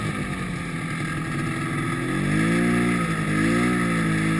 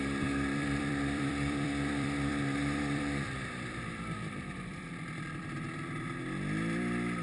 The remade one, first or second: second